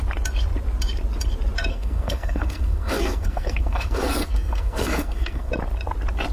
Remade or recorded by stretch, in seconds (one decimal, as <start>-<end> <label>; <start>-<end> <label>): 0.0-1.7 recorded; 1.7-5.5 remade; 5.5-6.3 recorded